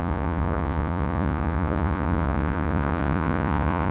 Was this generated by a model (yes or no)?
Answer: yes